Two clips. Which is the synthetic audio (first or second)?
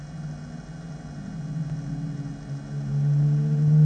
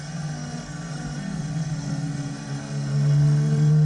second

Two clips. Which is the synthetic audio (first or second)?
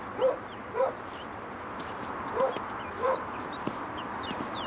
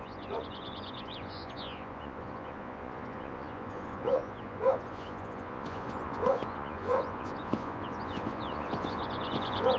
second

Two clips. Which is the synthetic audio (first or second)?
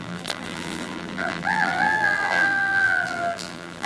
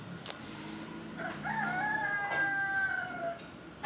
first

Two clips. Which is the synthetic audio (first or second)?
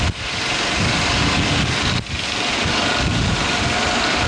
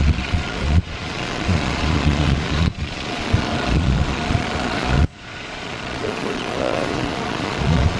second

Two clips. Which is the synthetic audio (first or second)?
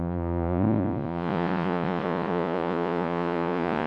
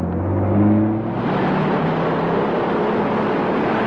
first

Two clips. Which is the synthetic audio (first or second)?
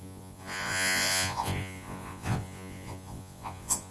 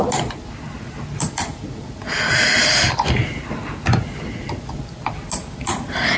first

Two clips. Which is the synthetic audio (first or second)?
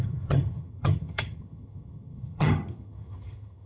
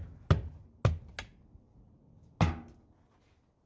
first